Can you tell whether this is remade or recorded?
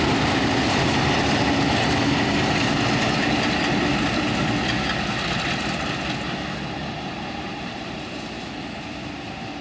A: recorded